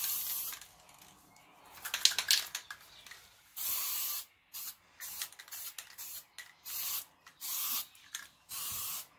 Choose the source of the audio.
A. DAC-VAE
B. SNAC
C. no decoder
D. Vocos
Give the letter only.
C